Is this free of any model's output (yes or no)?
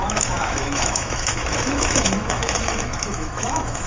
no